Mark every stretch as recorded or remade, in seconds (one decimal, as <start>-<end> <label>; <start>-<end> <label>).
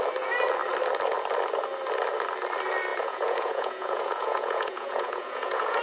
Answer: 0.0-2.9 recorded; 2.9-5.8 remade